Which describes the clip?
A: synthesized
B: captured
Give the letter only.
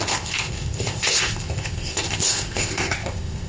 A